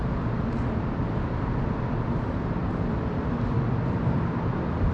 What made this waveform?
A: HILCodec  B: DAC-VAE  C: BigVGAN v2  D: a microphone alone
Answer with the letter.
C